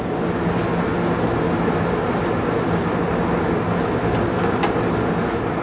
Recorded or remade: recorded